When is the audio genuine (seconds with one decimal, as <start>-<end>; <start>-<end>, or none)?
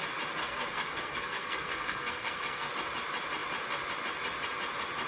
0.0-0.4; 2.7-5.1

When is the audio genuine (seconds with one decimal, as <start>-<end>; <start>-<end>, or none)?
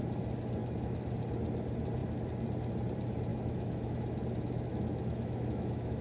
0.0-0.6; 1.1-3.3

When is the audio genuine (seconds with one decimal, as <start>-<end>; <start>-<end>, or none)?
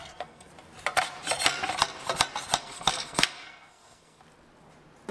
0.5-2.6; 4.2-5.1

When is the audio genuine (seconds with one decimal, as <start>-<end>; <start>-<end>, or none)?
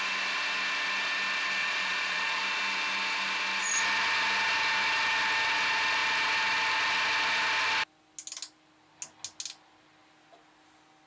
0.0-1.6; 2.4-11.1